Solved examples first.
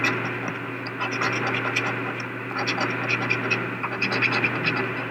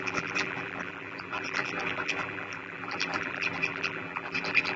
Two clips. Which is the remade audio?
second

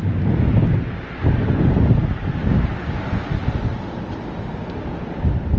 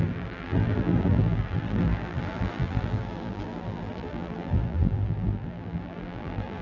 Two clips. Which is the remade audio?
second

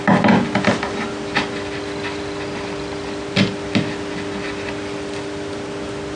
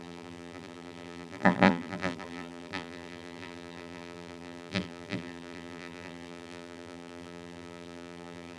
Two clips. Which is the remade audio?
second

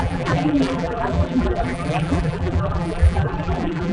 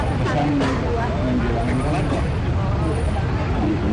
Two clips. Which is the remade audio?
first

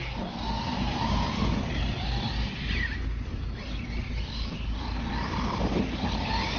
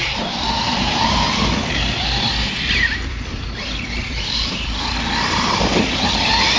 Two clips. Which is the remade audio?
second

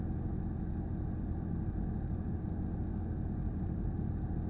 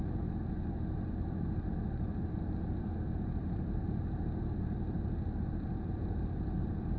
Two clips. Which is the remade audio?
second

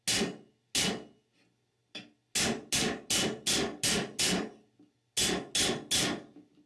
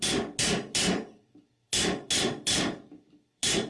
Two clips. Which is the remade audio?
second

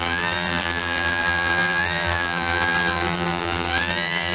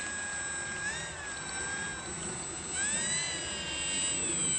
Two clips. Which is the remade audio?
first